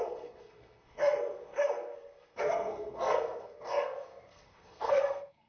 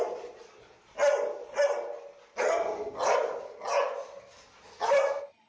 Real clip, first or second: second